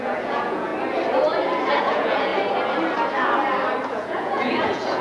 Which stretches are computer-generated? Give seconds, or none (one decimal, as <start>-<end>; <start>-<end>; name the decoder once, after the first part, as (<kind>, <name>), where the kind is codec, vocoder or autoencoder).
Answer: 0.0-0.7 (vocoder, Vocos); 1.8-2.3; 3.9-5.0